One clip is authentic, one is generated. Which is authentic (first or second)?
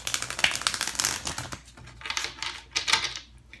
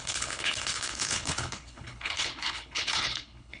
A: first